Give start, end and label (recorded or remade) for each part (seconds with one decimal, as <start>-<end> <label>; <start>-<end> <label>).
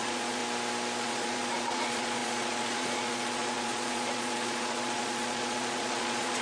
0.0-0.4 remade; 0.4-1.0 recorded; 1.0-6.4 remade